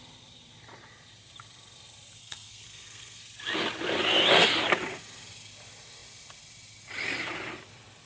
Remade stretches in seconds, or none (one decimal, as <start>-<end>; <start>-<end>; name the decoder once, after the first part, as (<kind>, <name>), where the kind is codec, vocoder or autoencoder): 2.2-3.2 (codec, SNAC)